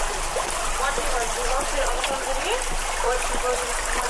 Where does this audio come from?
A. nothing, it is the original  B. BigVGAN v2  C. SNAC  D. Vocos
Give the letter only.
A